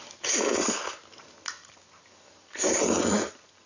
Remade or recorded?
recorded